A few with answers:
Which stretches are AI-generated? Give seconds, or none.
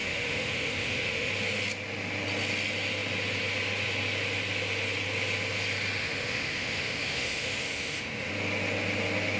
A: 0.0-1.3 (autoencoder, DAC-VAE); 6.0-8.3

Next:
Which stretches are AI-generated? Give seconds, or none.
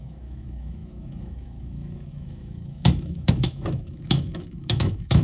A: 0.0-5.2 (autoencoder, DAC-VAE)